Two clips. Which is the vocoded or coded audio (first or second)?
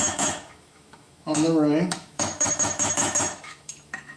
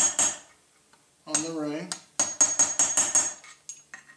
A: first